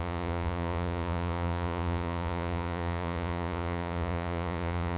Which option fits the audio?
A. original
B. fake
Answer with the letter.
B